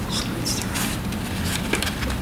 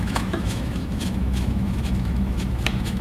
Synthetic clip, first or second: second